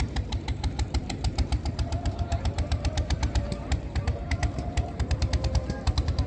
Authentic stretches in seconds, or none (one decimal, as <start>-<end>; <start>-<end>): none